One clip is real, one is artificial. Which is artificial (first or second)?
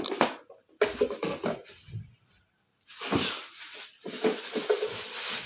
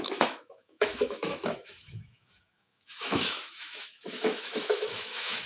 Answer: second